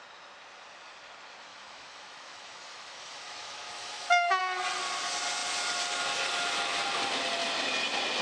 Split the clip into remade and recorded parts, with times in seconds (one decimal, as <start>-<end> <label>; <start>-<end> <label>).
0.0-1.5 recorded; 1.5-4.4 remade; 4.4-8.2 recorded